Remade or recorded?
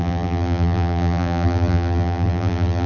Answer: remade